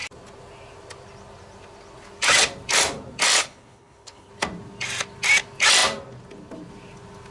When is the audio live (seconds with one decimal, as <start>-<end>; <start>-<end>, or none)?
0.0-3.4; 4.3-7.3